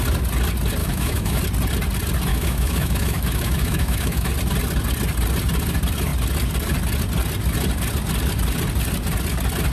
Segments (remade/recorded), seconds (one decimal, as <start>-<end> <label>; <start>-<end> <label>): 0.0-0.8 recorded; 0.8-1.4 remade; 1.4-2.3 recorded; 2.3-4.3 remade; 4.3-9.7 recorded